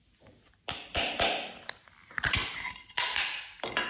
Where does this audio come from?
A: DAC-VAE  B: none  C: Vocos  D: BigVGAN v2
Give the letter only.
B